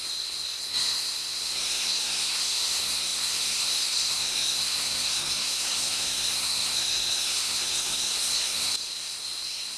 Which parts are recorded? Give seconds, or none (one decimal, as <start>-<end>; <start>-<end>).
none